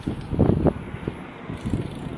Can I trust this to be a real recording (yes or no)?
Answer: yes